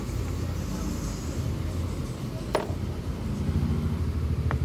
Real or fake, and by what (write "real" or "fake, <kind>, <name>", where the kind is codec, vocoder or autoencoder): real